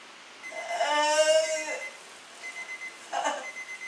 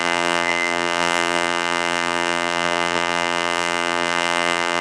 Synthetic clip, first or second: second